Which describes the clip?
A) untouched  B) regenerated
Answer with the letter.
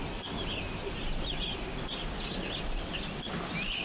A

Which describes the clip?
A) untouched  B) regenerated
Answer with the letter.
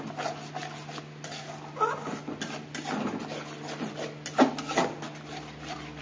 A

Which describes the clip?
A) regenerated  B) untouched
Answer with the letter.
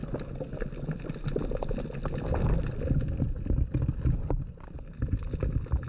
B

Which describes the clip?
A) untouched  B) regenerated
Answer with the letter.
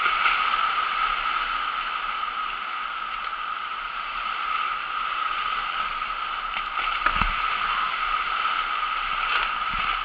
A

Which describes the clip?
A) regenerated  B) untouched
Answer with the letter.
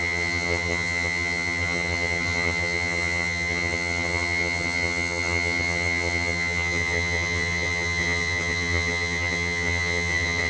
A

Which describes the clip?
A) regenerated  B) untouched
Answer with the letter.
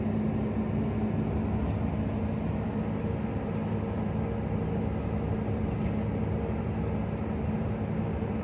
B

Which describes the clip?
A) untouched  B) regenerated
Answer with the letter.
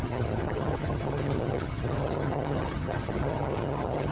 B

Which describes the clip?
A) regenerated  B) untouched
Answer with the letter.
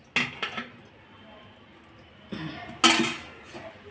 B